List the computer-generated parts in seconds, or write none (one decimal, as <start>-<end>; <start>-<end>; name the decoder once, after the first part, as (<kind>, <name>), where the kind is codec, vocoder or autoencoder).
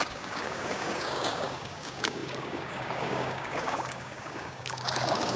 0.0-5.4 (codec, DAC)